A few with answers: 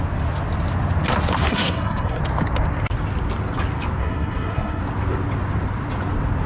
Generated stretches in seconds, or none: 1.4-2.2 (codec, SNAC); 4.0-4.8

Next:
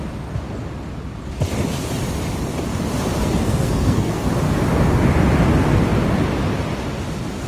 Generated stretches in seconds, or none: 3.2-4.3 (codec, SNAC)

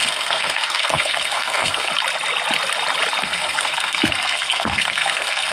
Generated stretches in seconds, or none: 0.0-1.9 (codec, SNAC); 3.2-5.5

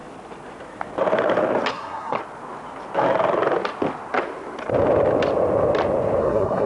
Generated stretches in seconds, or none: 1.7-2.2 (codec, SNAC); 6.2-6.7